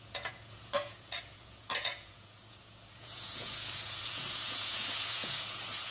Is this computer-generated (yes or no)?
yes